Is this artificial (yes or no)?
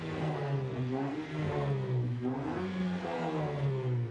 yes